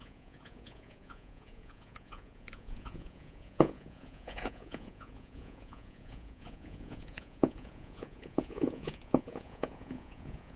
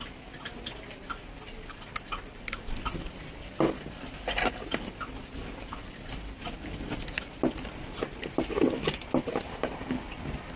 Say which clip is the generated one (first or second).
first